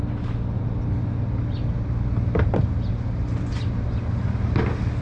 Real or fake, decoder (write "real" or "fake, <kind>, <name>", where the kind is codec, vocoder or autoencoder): real